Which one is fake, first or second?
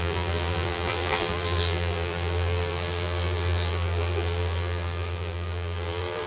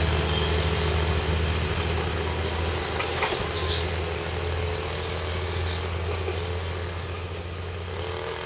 first